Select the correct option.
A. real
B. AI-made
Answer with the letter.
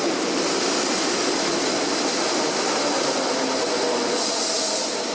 A